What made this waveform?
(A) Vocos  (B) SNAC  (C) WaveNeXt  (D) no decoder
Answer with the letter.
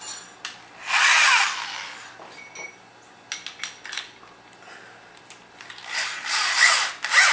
D